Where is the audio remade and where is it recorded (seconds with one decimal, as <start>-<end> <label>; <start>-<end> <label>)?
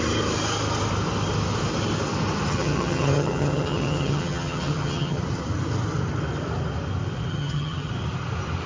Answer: 0.0-2.5 recorded; 2.5-5.2 remade; 5.2-7.3 recorded; 7.3-7.9 remade; 7.9-8.7 recorded